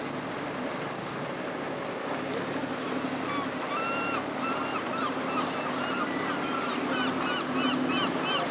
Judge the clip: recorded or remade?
recorded